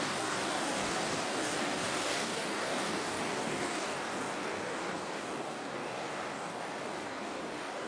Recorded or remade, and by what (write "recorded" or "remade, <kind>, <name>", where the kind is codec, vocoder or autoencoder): remade, codec, DAC